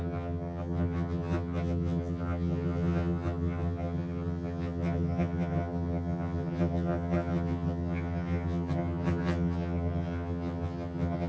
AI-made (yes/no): yes